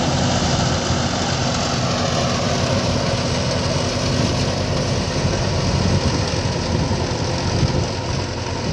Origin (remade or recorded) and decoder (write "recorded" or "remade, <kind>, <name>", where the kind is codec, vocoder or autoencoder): recorded